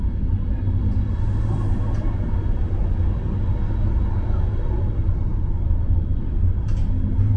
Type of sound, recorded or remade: recorded